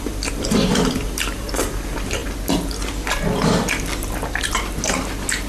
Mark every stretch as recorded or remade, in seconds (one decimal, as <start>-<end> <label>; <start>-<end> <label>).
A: 0.0-2.2 remade; 2.2-5.5 recorded

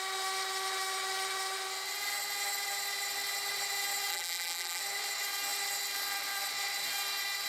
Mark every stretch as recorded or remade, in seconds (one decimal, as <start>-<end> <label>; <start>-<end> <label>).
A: 0.0-4.1 recorded; 4.1-4.8 remade; 4.8-7.5 recorded

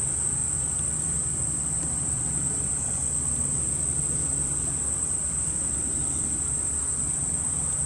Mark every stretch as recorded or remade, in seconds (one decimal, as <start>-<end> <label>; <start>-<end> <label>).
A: 0.0-0.4 remade; 0.4-1.0 recorded; 1.0-7.9 remade

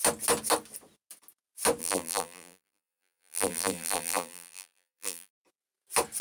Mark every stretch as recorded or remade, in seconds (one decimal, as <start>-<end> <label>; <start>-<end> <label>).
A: 0.0-1.8 recorded; 1.8-5.4 remade; 5.4-6.2 recorded

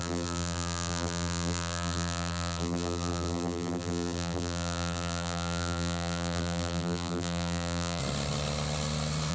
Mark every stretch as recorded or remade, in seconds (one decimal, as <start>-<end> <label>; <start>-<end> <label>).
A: 0.0-8.0 remade; 8.0-9.3 recorded